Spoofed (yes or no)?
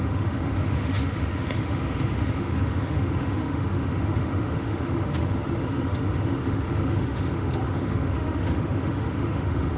yes